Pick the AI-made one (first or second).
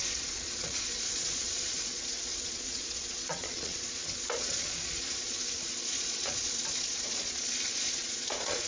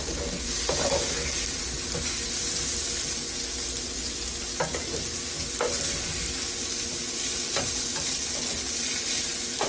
first